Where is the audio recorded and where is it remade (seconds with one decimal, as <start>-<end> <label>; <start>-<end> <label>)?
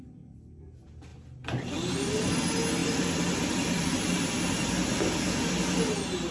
0.0-2.8 recorded; 2.8-4.2 remade; 4.2-6.3 recorded